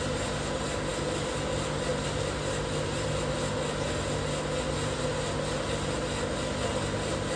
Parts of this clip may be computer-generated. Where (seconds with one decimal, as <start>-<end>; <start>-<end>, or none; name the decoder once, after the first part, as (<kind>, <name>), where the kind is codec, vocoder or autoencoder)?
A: none